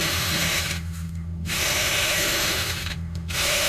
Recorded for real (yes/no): no